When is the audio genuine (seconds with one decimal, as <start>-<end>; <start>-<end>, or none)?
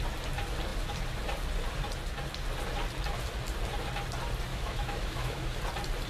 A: 0.0-4.5; 5.6-6.1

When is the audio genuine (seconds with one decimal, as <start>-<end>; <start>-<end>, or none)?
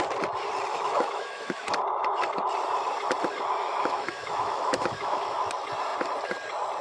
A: 0.0-0.7; 1.7-3.6; 5.4-6.8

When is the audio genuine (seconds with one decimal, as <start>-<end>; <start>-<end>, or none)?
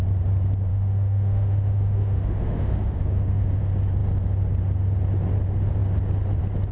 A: 0.0-0.7; 3.6-6.7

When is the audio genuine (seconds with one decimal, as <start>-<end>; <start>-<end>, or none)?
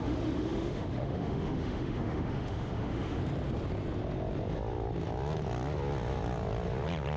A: 3.2-7.2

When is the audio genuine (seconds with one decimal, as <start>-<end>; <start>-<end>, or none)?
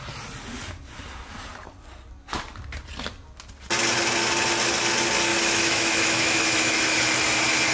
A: 0.0-5.3; 7.0-7.7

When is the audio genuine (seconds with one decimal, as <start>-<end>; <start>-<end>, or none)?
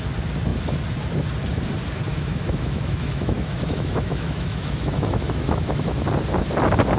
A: 0.0-2.1; 6.1-7.0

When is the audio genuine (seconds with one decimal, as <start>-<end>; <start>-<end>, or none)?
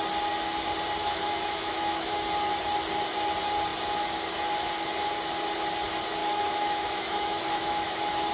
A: 0.0-1.0; 2.3-6.2